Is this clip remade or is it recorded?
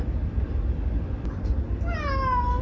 recorded